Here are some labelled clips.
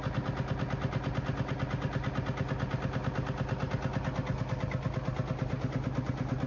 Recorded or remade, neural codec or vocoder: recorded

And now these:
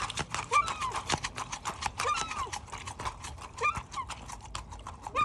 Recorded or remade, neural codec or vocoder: recorded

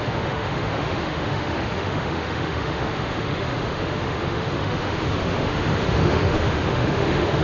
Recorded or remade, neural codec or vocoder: remade, autoencoder, DAC-VAE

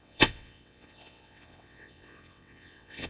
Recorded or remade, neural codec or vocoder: remade, vocoder, WaveNeXt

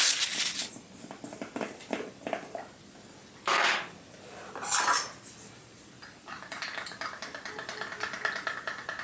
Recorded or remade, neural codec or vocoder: recorded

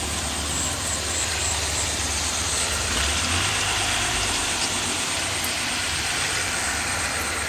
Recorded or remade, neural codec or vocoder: remade, vocoder, BigVGAN v2